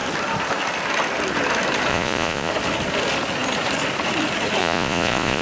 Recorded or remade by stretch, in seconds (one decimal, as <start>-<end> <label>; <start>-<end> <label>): 0.0-1.9 recorded; 1.9-2.5 remade; 2.5-4.6 recorded; 4.6-5.4 remade